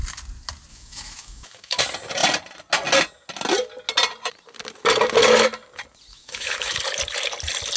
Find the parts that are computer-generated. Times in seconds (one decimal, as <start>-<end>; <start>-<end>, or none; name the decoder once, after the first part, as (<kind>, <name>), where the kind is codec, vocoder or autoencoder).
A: 0.7-1.8 (autoencoder, DAC-VAE); 6.1-6.8